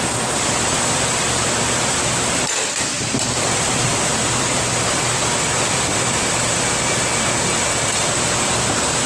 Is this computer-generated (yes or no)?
yes